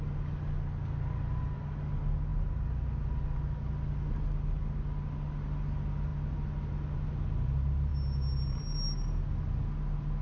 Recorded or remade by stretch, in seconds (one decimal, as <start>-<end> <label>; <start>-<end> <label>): 0.0-10.2 recorded